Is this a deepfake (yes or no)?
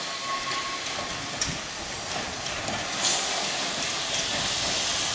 no